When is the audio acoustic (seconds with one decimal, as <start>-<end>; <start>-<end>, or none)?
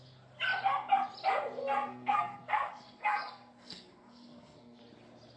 0.0-1.6; 4.8-5.4